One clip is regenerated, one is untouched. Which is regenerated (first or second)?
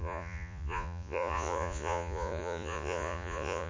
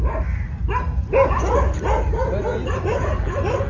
first